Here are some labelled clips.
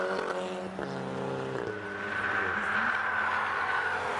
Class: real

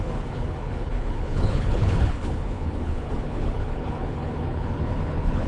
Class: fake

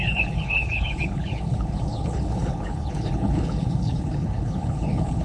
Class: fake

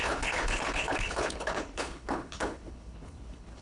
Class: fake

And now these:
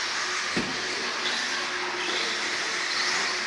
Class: real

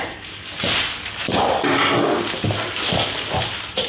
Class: real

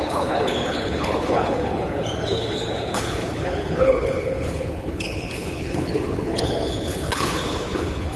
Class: fake